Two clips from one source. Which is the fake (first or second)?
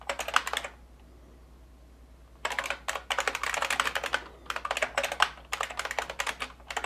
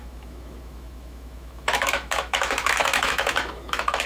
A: second